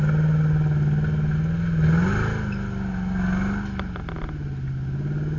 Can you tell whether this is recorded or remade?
recorded